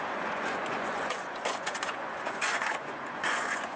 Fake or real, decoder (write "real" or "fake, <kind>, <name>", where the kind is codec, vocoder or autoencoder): fake, vocoder, Vocos